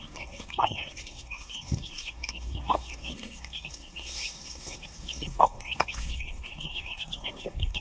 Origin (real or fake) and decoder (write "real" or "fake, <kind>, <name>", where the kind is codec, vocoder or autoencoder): fake, codec, SNAC